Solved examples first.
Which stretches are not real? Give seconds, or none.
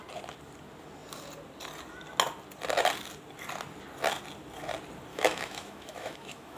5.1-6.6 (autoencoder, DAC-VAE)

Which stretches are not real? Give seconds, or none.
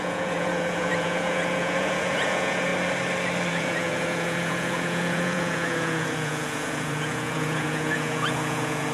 0.0-2.7 (vocoder, Vocos); 3.5-8.9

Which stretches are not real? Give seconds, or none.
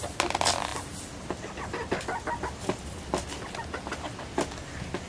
none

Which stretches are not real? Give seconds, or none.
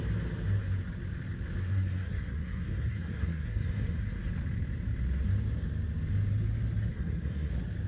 1.6-4.3 (codec, SNAC); 6.9-7.5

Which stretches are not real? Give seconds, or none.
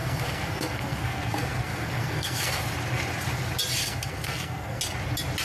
0.0-2.6 (codec, SNAC); 3.8-4.8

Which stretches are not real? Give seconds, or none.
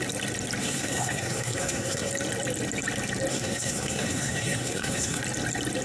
0.6-2.1 (codec, SNAC); 3.3-5.2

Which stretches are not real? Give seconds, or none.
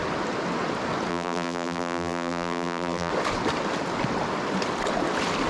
1.1-3.1 (vocoder, BigVGAN v2)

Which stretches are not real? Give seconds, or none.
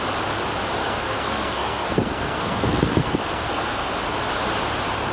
0.8-3.9 (codec, SNAC)